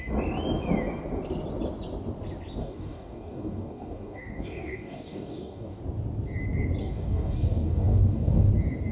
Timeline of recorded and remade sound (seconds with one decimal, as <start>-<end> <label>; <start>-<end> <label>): 0.0-2.6 recorded; 2.6-5.8 remade; 5.8-6.8 recorded; 6.8-8.5 remade; 8.5-8.9 recorded